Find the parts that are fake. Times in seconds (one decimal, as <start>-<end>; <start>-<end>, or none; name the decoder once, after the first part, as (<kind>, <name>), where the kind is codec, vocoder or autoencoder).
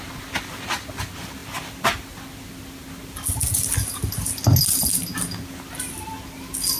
none